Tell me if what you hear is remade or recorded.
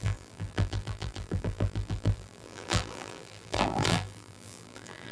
remade